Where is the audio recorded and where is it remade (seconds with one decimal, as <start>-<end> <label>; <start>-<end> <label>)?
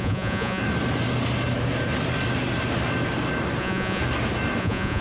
0.0-0.6 remade; 0.6-3.6 recorded; 3.6-4.0 remade; 4.0-4.6 recorded; 4.6-5.0 remade